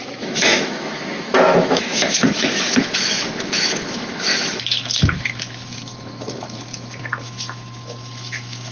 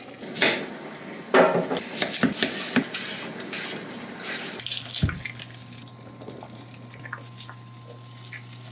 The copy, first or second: first